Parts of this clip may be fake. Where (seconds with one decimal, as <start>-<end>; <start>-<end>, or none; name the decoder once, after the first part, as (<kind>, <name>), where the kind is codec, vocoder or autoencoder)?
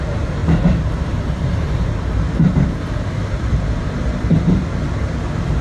0.0-4.3 (vocoder, BigVGAN v2)